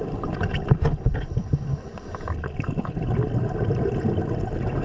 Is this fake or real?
real